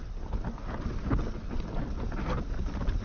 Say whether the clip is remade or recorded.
recorded